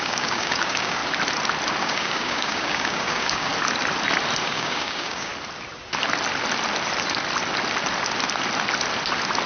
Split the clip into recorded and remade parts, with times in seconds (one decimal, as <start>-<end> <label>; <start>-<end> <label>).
0.0-1.0 remade; 1.0-1.8 recorded; 1.8-3.5 remade; 3.5-4.4 recorded; 4.4-5.3 remade; 5.3-9.5 recorded